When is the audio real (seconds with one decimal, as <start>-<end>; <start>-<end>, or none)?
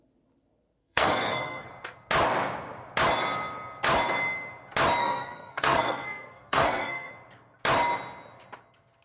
0.0-0.8; 1.7-5.0; 7.1-9.0